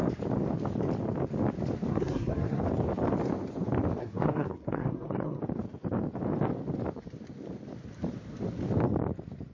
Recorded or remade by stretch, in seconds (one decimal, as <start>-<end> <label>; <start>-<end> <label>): 0.0-1.9 recorded; 1.9-2.6 remade; 2.6-4.0 recorded; 4.0-5.4 remade; 5.4-9.5 recorded